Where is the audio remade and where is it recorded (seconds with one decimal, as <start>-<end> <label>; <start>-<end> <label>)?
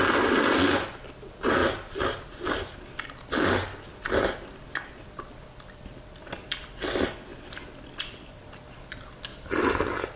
0.0-1.6 recorded; 1.6-6.7 remade; 6.7-7.3 recorded; 7.3-8.5 remade; 8.5-9.3 recorded; 9.3-10.2 remade